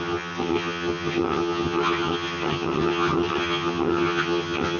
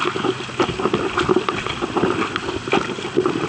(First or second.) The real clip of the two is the second